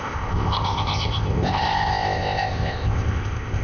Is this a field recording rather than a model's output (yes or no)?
no